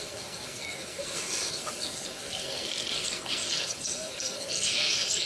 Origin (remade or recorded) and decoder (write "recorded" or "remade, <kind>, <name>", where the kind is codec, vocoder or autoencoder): remade, codec, SNAC